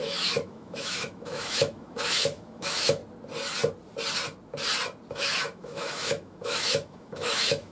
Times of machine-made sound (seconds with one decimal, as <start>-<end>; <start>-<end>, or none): 0.0-3.0; 5.1-7.7

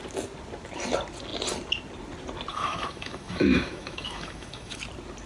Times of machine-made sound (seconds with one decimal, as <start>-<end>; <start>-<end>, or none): 2.5-4.8

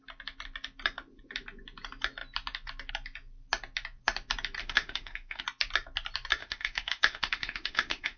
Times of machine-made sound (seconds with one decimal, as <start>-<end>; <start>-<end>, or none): 4.6-5.4; 6.4-8.2

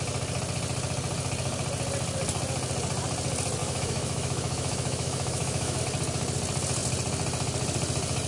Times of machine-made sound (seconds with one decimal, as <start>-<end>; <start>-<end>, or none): 3.6-5.8

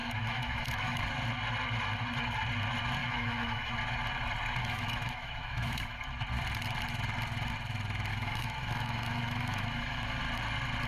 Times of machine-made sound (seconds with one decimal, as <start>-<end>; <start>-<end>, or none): 0.0-1.0; 3.0-3.7; 4.6-6.0; 8.1-10.2

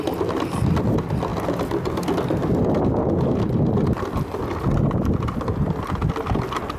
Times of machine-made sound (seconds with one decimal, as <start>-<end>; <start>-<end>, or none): none

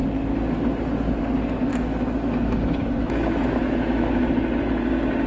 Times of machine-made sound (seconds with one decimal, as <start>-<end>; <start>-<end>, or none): 1.7-4.3

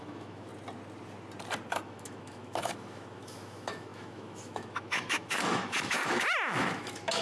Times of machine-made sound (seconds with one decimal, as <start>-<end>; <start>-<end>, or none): 0.0-0.5; 1.7-7.2